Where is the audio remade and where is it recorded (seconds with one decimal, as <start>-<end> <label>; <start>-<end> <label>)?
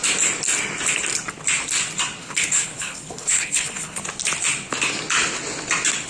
0.0-2.2 recorded; 2.2-4.0 remade; 4.0-6.1 recorded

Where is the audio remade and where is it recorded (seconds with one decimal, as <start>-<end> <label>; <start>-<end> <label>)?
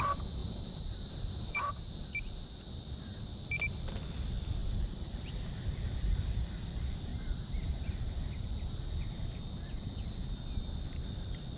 0.0-0.4 recorded; 0.4-1.7 remade; 1.7-4.6 recorded; 4.6-5.2 remade; 5.2-7.1 recorded; 7.1-8.1 remade; 8.1-11.6 recorded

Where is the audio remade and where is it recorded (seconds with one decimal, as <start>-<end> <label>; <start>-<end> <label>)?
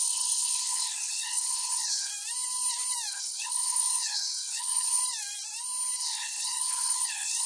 0.0-2.1 remade; 2.1-3.1 recorded; 3.1-5.0 remade; 5.0-6.0 recorded; 6.0-7.5 remade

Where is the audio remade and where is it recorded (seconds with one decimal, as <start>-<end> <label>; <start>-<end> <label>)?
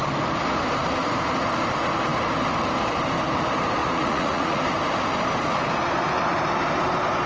0.0-3.8 recorded; 3.8-4.6 remade; 4.6-7.3 recorded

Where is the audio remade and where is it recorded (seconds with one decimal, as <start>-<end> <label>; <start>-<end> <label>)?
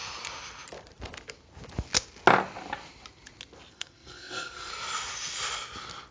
0.0-3.7 recorded; 3.7-4.7 remade; 4.7-6.1 recorded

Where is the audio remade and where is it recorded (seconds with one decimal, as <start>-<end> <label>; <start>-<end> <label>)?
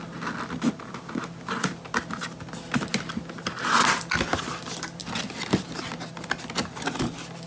0.0-7.5 recorded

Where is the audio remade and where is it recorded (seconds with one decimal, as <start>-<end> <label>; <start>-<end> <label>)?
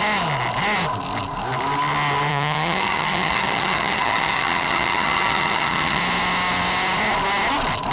0.0-2.3 recorded; 2.3-6.0 remade; 6.0-7.9 recorded